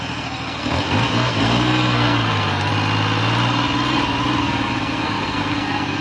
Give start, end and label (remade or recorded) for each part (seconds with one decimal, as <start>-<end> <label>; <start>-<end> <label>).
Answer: 0.0-2.7 remade; 2.7-4.4 recorded; 4.4-6.0 remade